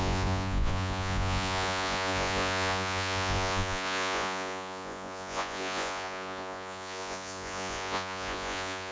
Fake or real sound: fake